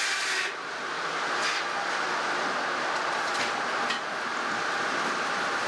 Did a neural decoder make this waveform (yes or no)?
no